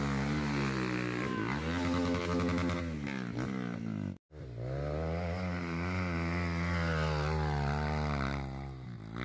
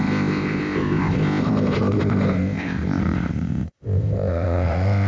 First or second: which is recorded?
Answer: first